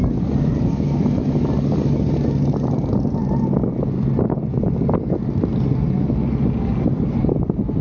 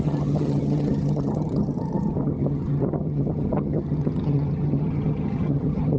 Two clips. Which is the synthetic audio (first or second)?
second